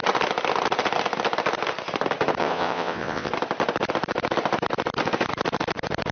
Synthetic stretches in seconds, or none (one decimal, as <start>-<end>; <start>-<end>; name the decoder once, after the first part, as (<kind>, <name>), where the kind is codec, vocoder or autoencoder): 2.4-3.3 (vocoder, WaveNeXt)